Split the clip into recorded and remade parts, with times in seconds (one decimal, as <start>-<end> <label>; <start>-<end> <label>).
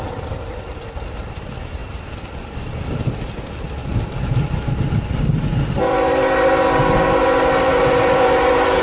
0.0-8.8 recorded